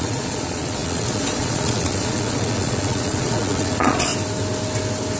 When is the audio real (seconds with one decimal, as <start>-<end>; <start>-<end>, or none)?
4.1-5.2